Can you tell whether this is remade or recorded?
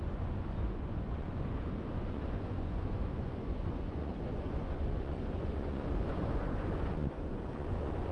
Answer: remade